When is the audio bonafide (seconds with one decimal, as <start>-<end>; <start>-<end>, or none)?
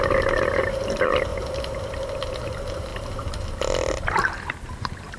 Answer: 1.3-2.5; 2.9-4.8